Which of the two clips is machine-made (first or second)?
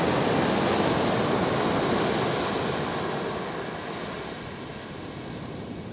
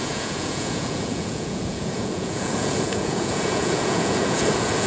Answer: second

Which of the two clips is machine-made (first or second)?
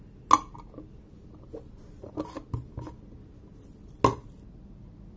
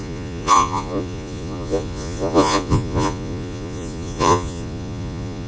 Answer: second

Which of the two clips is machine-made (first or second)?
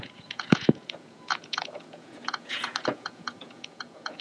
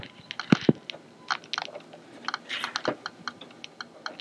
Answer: first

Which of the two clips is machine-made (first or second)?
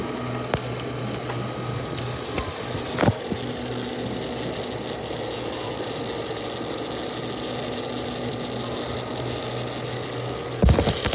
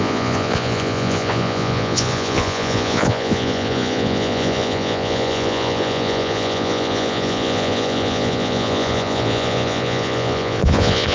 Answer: second